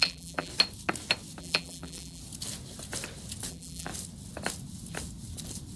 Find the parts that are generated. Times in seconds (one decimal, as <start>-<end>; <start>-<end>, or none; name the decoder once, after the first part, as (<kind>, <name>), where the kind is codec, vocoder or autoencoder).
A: 0.0-0.5 (vocoder, BigVGAN v2); 1.4-2.2; 3.5-3.9